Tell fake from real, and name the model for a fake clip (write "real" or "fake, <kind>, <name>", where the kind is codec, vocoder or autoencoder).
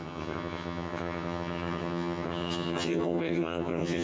fake, vocoder, HiFi-GAN